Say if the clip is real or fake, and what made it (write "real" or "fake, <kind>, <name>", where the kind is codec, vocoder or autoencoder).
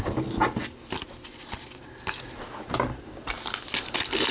real